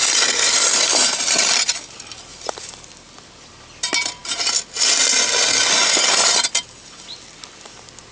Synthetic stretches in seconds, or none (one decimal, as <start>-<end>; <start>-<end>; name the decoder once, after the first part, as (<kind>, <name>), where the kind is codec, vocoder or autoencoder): 2.3-2.9 (vocoder, BigVGAN v2)